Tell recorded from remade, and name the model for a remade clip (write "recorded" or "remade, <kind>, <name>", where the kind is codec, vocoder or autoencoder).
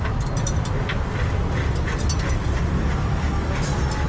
recorded